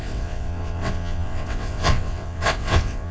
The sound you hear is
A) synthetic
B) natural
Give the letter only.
A